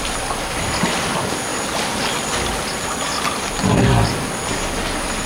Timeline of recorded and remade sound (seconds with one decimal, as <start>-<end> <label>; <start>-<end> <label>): 0.0-5.3 recorded